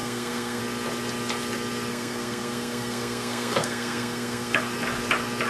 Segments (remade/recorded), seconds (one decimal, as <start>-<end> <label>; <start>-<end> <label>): 0.0-0.6 remade; 0.6-1.9 recorded; 1.9-4.6 remade; 4.6-5.5 recorded